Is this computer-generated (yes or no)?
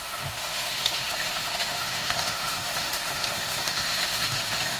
yes